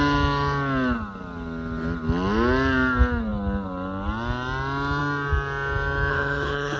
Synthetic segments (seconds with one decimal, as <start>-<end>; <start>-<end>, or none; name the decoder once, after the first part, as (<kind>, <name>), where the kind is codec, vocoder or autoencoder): 6.1-6.8 (codec, HILCodec)